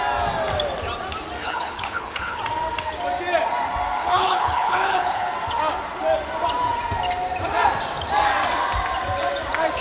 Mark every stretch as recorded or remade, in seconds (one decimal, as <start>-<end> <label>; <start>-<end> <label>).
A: 0.0-1.4 recorded; 1.4-2.4 remade; 2.4-4.0 recorded; 4.0-5.3 remade; 5.3-9.8 recorded